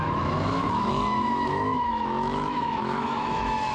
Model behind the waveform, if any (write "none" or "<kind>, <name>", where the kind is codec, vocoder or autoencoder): autoencoder, DAC-VAE